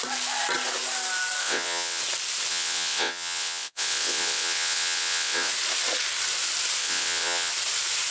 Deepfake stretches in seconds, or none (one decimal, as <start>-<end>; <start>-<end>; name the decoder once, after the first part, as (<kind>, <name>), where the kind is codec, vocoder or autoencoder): 1.4-2.0 (vocoder, WaveNeXt); 2.5-5.5; 6.8-7.5

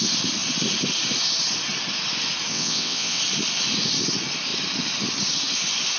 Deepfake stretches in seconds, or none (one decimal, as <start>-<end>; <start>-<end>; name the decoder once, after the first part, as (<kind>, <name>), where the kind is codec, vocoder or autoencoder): 2.5-3.2 (vocoder, WaveNeXt)

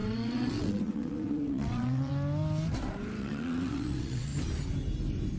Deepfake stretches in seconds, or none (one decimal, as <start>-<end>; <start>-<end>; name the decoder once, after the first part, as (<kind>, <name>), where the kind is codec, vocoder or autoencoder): 0.0-2.1 (vocoder, WaveNeXt); 3.2-4.3